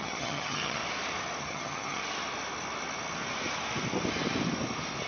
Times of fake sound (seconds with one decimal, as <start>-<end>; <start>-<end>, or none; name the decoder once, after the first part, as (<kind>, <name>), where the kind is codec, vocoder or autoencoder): 0.0-0.8 (vocoder, HiFi-GAN); 1.4-2.0